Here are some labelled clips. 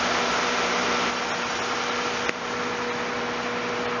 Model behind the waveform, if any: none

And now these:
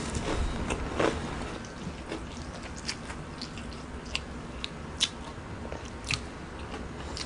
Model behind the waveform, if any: none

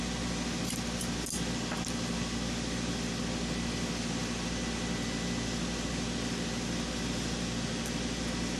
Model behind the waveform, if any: none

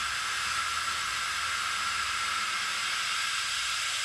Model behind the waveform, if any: none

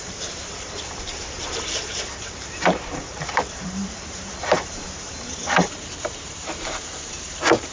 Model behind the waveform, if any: vocoder, BigVGAN v2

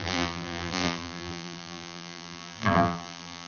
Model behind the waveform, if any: vocoder, BigVGAN v2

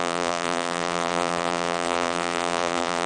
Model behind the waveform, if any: vocoder, BigVGAN v2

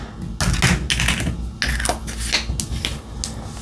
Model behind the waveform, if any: none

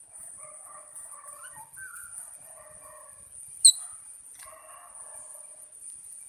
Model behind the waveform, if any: none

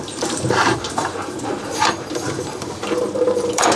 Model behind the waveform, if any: vocoder, BigVGAN v2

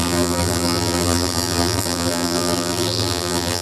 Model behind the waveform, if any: vocoder, BigVGAN v2